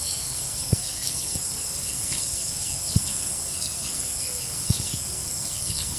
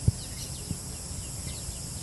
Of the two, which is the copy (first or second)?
first